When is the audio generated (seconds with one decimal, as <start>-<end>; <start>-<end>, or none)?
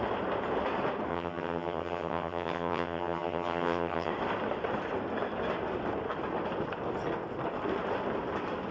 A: 1.1-4.1